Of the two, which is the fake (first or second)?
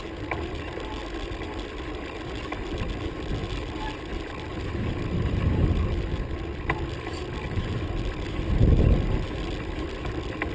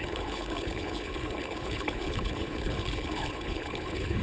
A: second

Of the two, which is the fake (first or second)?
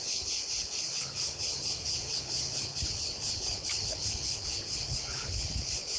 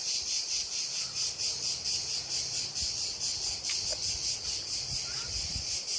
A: first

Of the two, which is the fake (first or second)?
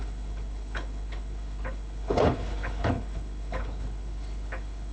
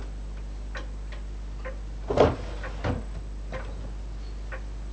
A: first